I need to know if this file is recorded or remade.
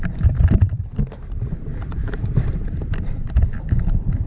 remade